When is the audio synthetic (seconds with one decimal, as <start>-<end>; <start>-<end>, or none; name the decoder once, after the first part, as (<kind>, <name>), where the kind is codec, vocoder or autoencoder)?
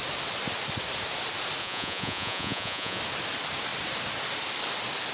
1.6-3.0 (vocoder, Vocos)